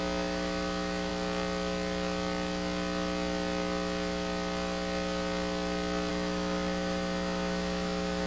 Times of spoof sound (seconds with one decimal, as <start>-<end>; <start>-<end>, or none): 0.0-1.1; 6.1-8.3